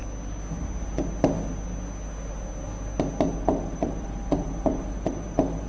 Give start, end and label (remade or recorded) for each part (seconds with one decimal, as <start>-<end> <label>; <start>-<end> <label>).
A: 0.0-3.4 recorded; 3.4-5.7 remade